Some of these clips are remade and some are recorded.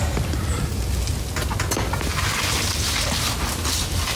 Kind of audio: recorded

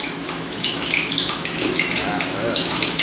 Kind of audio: remade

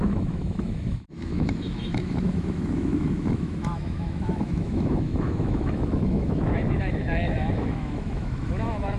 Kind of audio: remade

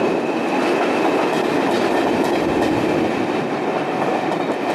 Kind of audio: recorded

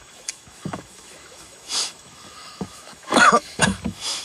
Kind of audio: remade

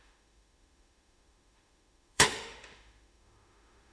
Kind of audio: remade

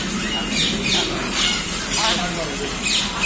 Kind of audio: recorded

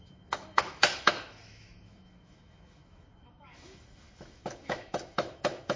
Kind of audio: remade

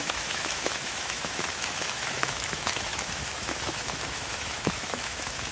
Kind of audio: remade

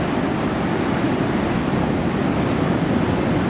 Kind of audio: recorded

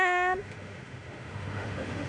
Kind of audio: remade